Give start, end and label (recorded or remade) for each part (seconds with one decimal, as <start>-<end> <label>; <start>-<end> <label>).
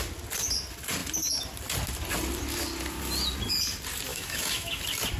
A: 0.0-4.1 recorded; 4.1-4.8 remade; 4.8-5.2 recorded